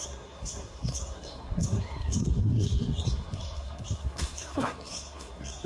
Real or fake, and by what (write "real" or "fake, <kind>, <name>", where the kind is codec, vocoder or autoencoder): fake, codec, SNAC